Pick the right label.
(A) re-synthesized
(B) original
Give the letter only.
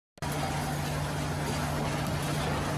B